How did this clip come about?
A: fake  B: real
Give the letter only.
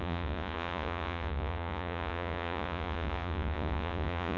A